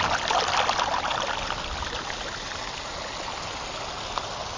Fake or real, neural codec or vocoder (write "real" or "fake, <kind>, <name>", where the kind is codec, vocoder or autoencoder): real